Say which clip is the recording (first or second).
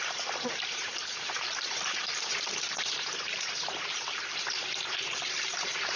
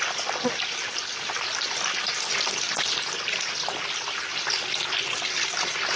second